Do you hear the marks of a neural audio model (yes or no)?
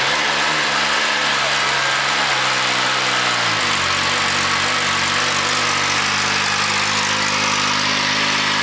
no